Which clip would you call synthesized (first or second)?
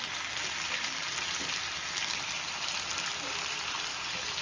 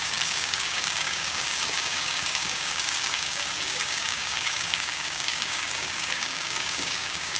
second